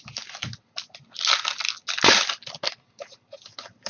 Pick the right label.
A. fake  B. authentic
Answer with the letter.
B